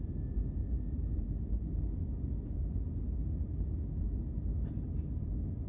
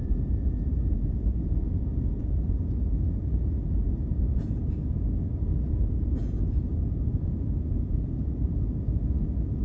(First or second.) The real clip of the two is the first